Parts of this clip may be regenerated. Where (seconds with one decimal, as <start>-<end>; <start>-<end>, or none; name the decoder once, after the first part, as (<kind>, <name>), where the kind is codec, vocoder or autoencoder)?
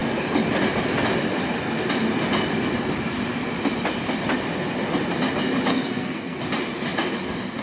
5.7-6.4 (codec, SNAC)